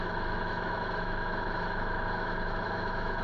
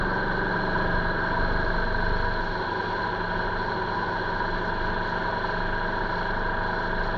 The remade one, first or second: first